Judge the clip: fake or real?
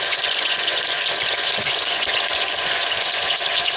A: fake